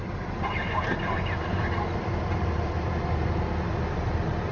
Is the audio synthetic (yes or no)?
no